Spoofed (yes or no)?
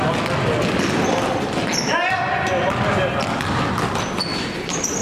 no